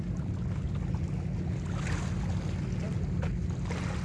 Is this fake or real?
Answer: real